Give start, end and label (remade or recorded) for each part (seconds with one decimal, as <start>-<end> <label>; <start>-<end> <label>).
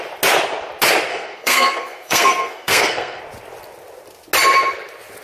0.0-1.1 recorded; 1.1-3.2 remade; 3.2-5.2 recorded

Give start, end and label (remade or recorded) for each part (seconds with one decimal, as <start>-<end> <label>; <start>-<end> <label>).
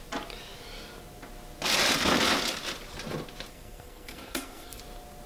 0.0-3.5 recorded; 3.5-4.8 remade; 4.8-5.3 recorded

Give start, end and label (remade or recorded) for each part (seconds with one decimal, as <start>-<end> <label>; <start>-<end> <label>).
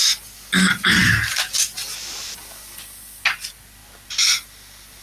0.0-5.0 recorded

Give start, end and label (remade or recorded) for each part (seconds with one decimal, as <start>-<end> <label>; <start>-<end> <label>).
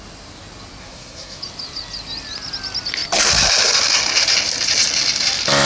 0.0-0.8 recorded; 0.8-1.4 remade; 1.4-5.7 recorded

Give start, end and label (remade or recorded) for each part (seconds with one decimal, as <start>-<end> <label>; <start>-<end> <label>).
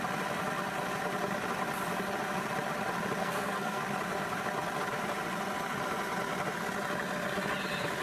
0.0-3.2 recorded; 3.2-3.8 remade; 3.8-8.0 recorded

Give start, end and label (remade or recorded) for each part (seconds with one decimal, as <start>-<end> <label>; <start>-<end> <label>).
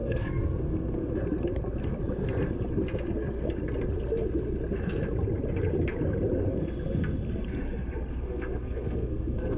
0.0-1.1 remade; 1.1-8.1 recorded; 8.1-9.6 remade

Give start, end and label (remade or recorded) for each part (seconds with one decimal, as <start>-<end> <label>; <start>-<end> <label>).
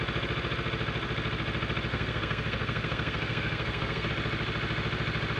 0.0-1.9 recorded; 1.9-4.1 remade; 4.1-5.4 recorded